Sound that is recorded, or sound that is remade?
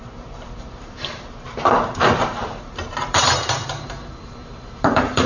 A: remade